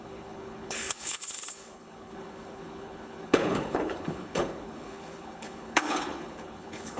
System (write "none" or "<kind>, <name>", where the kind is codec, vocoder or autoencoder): codec, HILCodec